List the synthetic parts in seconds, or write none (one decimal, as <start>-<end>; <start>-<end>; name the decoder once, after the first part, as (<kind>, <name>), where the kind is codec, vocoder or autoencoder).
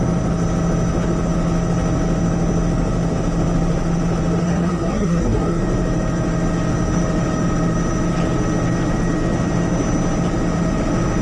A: 4.4-5.6 (codec, SNAC)